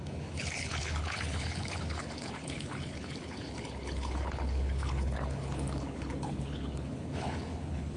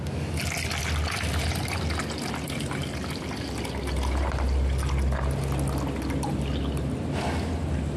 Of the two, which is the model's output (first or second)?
first